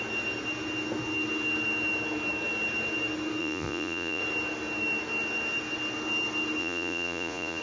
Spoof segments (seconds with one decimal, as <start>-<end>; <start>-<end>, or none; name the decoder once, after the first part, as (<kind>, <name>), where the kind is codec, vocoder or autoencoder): 3.4-4.2 (vocoder, Vocos); 6.6-7.6